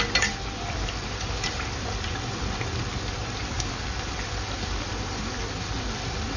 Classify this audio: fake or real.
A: real